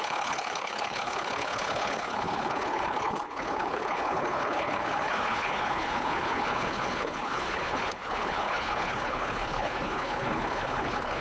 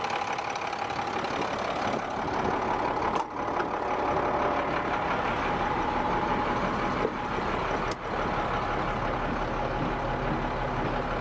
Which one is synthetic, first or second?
first